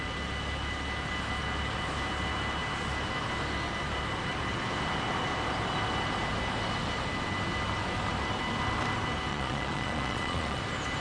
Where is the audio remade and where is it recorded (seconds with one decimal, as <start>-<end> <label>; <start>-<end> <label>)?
0.0-9.3 recorded; 9.3-10.6 remade; 10.6-11.0 recorded